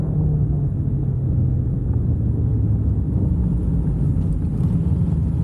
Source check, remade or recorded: recorded